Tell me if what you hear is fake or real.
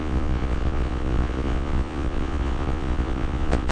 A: fake